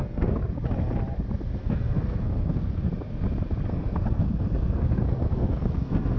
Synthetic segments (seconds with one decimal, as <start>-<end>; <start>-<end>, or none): 0.0-0.4; 1.6-2.9; 3.7-6.2